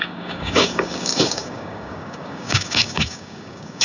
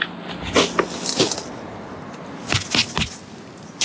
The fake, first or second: first